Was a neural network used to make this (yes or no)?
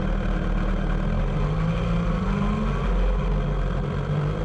no